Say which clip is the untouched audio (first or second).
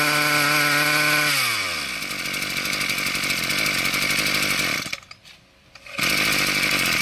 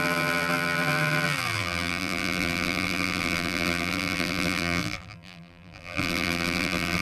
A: first